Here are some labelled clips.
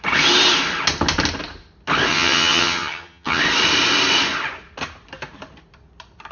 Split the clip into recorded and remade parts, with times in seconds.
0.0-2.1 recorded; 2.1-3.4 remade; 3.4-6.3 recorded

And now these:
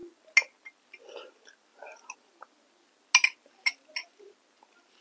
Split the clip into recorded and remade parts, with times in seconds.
0.0-5.0 recorded

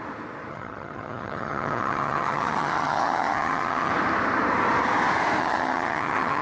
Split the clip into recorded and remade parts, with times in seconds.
0.0-0.5 recorded; 0.5-3.9 remade; 3.9-5.4 recorded; 5.4-6.4 remade

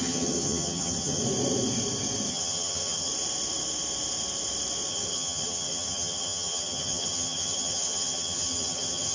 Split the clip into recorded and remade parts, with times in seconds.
0.0-1.2 remade; 1.2-2.3 recorded; 2.3-3.1 remade; 3.1-4.9 recorded; 4.9-9.1 remade

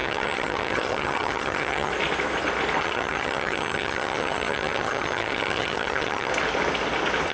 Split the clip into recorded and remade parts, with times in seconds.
0.0-1.9 remade; 1.9-2.8 recorded; 2.8-6.3 remade; 6.3-7.3 recorded